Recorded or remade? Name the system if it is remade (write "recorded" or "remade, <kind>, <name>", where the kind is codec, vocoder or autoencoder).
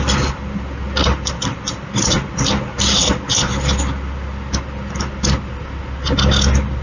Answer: recorded